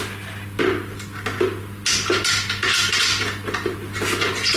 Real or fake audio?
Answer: real